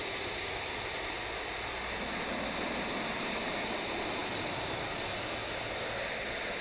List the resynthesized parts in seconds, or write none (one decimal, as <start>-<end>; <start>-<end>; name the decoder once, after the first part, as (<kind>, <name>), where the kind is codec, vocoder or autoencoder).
none